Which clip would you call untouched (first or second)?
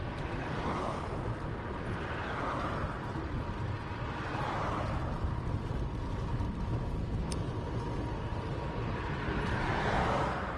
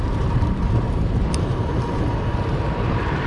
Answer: first